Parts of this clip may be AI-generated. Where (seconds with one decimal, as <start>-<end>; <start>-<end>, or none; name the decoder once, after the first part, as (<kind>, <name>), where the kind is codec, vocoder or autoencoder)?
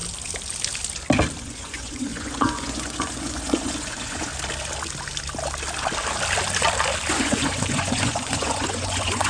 1.4-4.3 (vocoder, Vocos); 7.1-9.3